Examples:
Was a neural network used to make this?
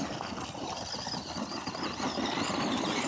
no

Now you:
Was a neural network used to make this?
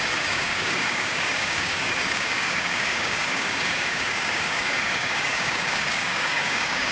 yes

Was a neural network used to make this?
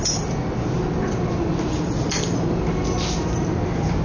no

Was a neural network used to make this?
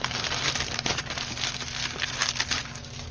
no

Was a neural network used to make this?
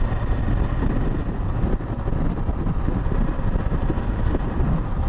no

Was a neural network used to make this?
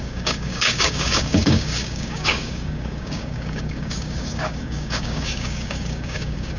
yes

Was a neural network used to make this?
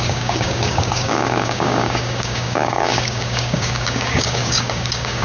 yes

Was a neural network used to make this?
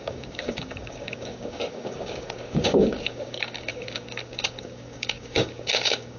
yes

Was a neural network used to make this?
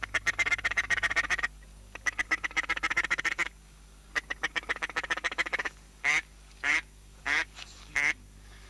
yes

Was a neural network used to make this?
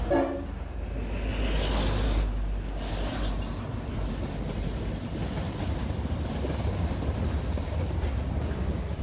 no